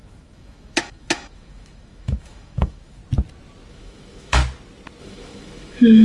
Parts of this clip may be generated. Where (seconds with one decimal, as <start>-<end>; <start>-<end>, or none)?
0.0-3.0; 3.7-4.4; 5.0-6.0